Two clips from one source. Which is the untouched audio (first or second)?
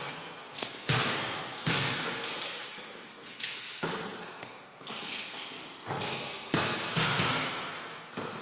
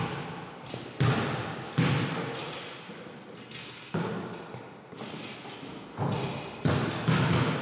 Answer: second